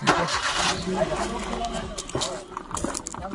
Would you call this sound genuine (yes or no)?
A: yes